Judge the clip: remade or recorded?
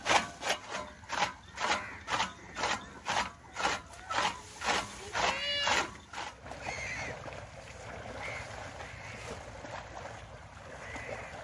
recorded